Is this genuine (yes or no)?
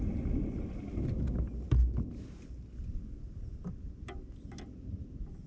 yes